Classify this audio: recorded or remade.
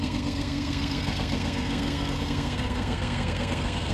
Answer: remade